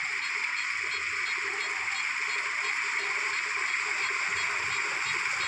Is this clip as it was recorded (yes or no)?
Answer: yes